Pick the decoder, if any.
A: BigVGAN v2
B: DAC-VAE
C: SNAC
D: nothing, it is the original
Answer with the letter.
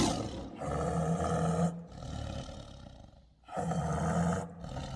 D